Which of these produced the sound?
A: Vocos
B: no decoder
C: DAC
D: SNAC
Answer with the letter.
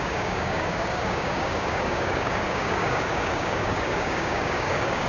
C